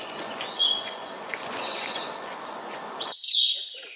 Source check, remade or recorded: remade